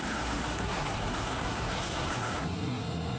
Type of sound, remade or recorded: remade